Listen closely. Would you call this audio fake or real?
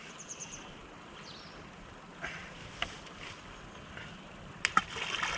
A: real